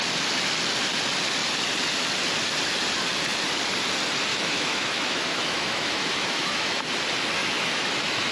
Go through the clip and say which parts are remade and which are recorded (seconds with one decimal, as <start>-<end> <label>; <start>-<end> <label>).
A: 0.0-4.3 recorded; 4.3-6.8 remade; 6.8-7.4 recorded; 7.4-8.3 remade